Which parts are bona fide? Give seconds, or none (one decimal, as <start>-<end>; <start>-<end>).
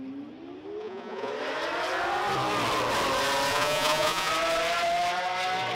0.0-0.8; 1.3-3.5; 4.3-5.7